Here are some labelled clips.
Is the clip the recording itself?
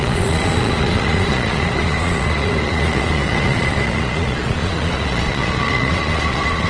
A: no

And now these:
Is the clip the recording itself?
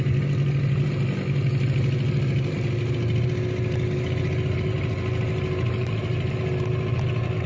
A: yes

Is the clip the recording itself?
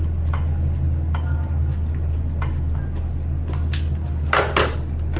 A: yes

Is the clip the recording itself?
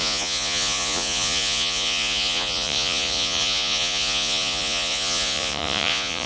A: no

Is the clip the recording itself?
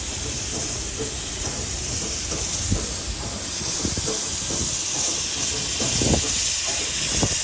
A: yes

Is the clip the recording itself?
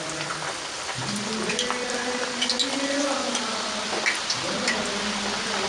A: yes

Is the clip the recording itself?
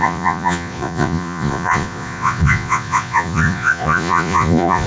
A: no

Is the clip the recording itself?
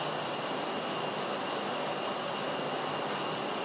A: yes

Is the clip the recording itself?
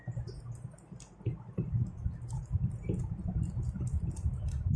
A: yes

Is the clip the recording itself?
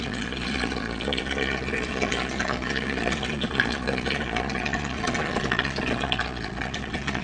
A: no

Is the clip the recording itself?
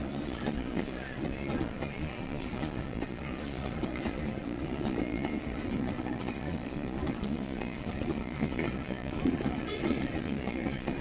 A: no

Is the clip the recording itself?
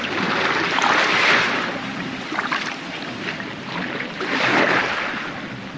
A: yes